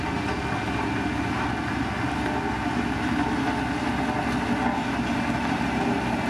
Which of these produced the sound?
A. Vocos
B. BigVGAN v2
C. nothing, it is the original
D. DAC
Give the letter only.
C